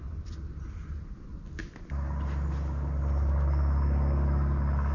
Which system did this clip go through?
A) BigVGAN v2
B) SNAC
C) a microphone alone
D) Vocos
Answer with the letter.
C